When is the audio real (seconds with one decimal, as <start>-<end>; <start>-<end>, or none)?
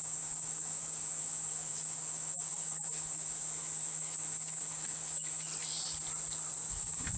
5.5-6.7